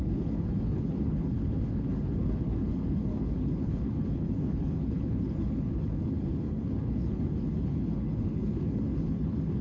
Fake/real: fake